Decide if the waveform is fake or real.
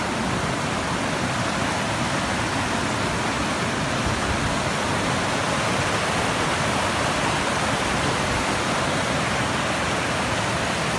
real